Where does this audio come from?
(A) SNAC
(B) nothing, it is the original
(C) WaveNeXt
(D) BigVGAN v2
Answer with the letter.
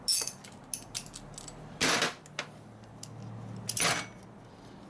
B